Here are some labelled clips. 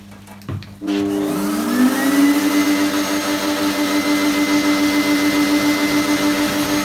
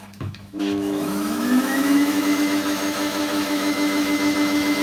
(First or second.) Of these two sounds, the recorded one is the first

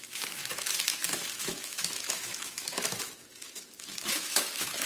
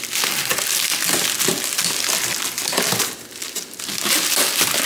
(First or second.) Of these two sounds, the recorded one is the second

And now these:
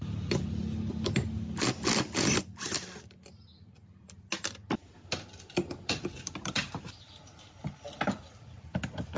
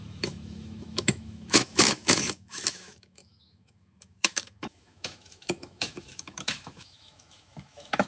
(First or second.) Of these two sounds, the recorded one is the first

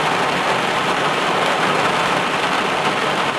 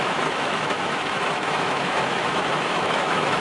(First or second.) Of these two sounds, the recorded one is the first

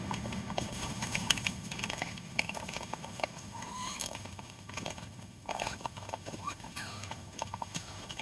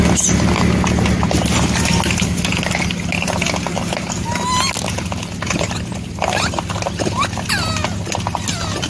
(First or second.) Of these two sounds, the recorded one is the second